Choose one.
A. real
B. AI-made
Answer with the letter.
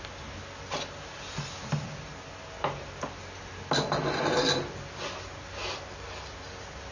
A